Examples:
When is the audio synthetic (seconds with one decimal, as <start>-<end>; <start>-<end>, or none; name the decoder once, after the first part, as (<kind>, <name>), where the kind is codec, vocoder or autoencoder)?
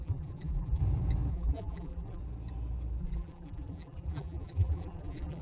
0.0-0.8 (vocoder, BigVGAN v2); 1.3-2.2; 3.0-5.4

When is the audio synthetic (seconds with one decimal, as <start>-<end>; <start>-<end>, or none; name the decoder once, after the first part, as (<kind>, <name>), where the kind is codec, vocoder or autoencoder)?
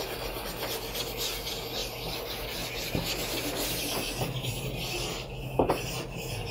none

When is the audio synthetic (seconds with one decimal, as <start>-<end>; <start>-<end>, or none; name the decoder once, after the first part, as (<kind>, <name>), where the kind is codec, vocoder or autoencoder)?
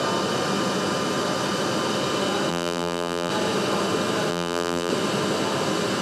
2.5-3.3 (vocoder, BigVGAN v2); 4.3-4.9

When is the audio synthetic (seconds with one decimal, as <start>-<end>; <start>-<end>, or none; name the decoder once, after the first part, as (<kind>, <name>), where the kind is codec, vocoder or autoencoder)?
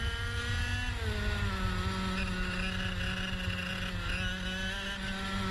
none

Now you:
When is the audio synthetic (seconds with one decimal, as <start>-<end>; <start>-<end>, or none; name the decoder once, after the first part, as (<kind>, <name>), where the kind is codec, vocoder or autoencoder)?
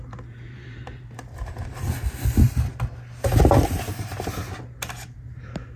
0.0-2.7 (vocoder, BigVGAN v2)